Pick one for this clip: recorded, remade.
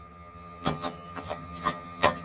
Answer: remade